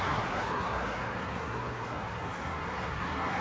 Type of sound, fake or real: fake